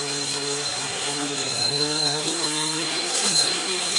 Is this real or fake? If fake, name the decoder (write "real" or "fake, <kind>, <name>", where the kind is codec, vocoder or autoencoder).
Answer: fake, codec, SNAC